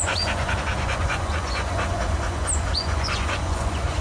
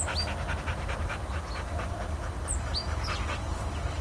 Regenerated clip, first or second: first